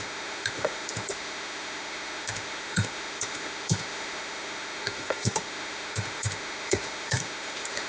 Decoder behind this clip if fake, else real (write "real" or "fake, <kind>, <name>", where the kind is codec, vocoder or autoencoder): fake, autoencoder, DAC-VAE